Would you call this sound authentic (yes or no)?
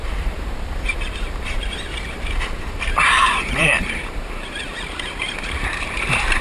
no